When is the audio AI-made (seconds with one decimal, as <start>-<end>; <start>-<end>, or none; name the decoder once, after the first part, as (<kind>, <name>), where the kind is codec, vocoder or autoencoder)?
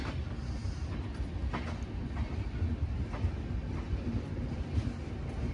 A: none